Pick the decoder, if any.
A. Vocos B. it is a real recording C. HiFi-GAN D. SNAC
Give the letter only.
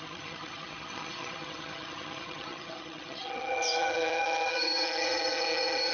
C